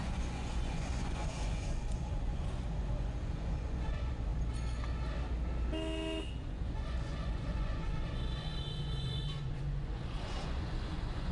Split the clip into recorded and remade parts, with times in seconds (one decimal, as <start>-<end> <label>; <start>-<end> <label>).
0.0-4.3 remade; 4.3-6.4 recorded; 6.4-11.3 remade